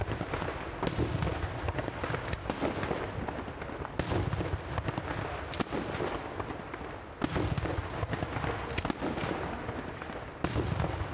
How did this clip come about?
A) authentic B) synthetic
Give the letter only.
A